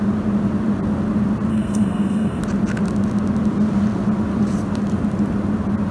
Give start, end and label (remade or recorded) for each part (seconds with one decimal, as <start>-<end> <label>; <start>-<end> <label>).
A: 0.0-1.5 recorded; 1.5-2.4 remade; 2.4-5.9 recorded